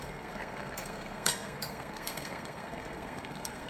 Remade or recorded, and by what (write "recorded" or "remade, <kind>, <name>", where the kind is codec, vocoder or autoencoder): remade, codec, SNAC